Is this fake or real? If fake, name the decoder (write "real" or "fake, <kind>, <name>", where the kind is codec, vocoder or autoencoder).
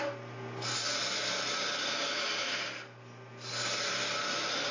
real